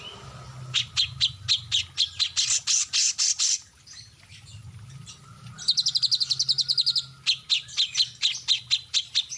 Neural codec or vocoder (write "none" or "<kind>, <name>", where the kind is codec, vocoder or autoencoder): none